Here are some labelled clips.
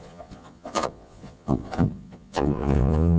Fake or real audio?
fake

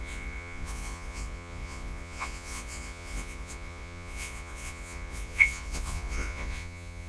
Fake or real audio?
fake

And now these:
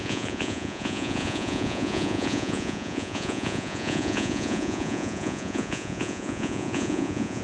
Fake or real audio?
fake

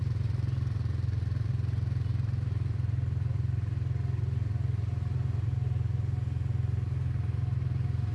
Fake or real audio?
real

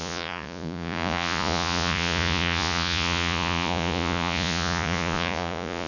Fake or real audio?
fake